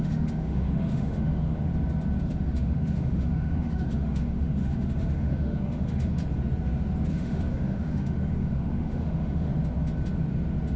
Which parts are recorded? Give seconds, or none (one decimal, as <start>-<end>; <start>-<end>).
1.7-2.2; 6.2-7.1; 9.5-10.8